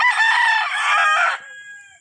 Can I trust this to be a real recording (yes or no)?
yes